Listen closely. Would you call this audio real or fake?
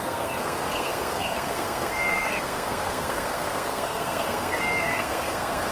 fake